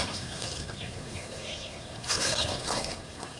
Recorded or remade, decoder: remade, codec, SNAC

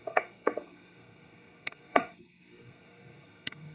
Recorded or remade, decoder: remade, codec, SNAC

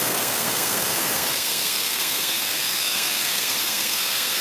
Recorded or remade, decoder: remade, codec, SNAC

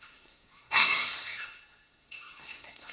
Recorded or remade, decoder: remade, codec, SNAC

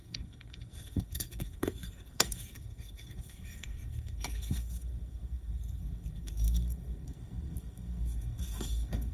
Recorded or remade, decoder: remade, codec, SNAC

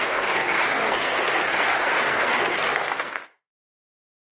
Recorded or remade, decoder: remade, codec, SNAC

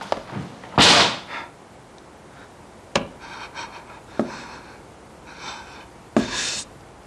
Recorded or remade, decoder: recorded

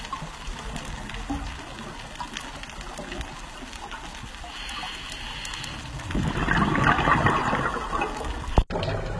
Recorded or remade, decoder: recorded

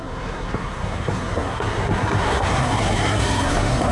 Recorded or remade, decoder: remade, codec, SNAC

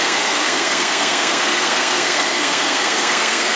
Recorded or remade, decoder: remade, codec, SNAC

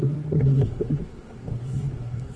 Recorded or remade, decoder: remade, codec, SNAC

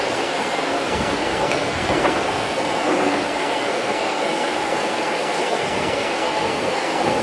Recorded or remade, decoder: remade, codec, SNAC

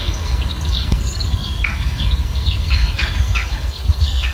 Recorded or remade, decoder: remade, codec, SNAC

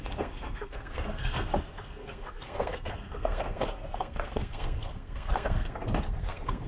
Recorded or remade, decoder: remade, codec, SNAC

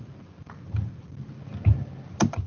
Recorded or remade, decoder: recorded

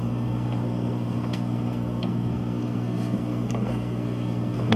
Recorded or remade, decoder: remade, codec, SNAC